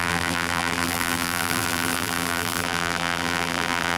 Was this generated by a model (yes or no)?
yes